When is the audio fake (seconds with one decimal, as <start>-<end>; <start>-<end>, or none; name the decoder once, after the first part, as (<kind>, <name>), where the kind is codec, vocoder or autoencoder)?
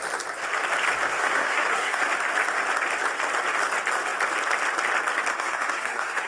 1.1-2.0 (codec, SNAC); 5.3-6.3